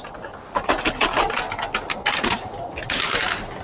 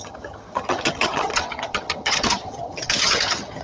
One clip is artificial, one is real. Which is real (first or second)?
first